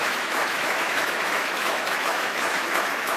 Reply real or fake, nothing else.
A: fake